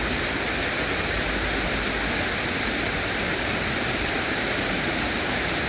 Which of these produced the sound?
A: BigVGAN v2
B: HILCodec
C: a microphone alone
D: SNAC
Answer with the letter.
C